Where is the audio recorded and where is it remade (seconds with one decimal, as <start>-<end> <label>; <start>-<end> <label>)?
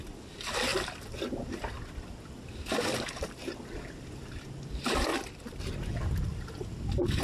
0.0-7.2 recorded